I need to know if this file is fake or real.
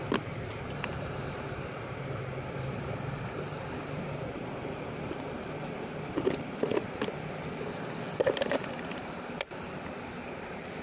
real